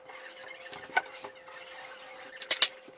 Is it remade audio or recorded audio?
recorded